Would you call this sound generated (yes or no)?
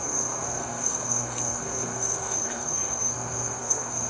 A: yes